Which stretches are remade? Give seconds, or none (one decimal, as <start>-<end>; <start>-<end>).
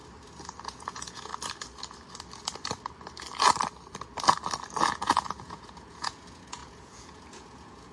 0.6-1.3; 4.9-7.9